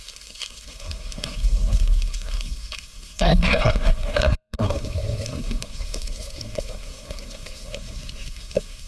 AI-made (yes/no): yes